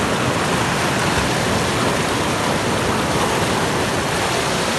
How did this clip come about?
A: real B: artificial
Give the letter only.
A